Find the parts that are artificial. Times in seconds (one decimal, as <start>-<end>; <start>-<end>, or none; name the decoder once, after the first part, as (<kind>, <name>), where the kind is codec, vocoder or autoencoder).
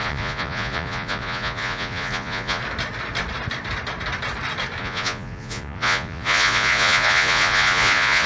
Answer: 0.0-2.6 (vocoder, Vocos); 4.8-8.3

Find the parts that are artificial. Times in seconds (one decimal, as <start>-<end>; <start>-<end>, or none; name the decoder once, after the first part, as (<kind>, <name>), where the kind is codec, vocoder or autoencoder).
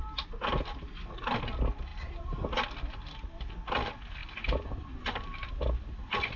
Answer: 4.2-5.5 (vocoder, BigVGAN v2)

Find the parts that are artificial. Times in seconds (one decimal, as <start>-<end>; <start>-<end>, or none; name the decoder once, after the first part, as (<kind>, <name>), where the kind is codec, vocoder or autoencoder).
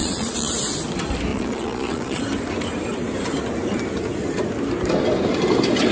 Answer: 0.0-0.5 (vocoder, Vocos); 1.3-2.2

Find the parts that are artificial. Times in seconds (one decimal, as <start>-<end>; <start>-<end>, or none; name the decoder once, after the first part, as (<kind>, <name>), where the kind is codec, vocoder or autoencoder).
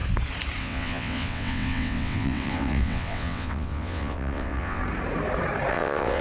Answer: 0.6-4.8 (vocoder, WaveNeXt); 5.7-6.2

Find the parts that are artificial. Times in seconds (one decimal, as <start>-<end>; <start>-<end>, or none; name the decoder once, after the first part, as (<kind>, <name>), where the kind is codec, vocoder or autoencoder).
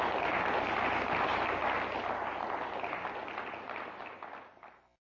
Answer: none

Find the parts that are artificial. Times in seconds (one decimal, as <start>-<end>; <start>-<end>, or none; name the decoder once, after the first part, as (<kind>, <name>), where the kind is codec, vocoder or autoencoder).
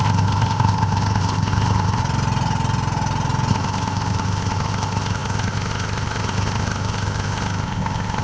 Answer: 0.0-2.0 (codec, ZipCodec); 3.5-8.2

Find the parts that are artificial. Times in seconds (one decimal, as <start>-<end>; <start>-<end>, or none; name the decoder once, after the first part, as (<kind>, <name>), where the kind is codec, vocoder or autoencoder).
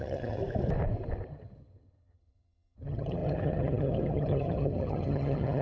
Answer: 0.0-0.4 (vocoder, HiFi-GAN); 1.3-5.6